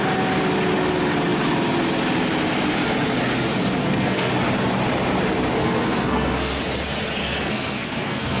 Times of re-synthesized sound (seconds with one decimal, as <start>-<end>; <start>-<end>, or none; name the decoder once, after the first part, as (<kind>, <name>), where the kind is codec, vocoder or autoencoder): 3.8-4.3 (codec, SNAC); 5.6-6.6; 7.2-8.4